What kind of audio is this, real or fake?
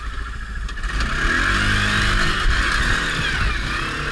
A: real